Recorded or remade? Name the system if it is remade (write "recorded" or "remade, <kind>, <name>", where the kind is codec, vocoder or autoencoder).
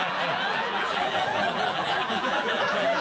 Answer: remade, vocoder, BigVGAN v2